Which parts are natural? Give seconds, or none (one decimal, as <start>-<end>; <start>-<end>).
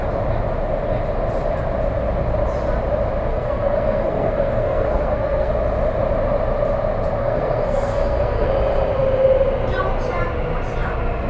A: 0.0-3.3; 5.5-7.2; 8.5-11.3